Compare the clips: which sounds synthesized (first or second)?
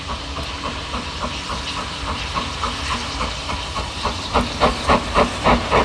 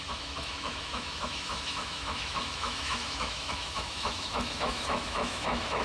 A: second